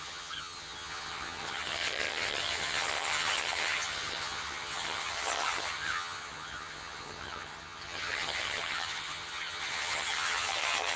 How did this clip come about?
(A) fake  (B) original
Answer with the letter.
A